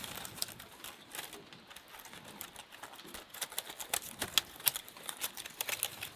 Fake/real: real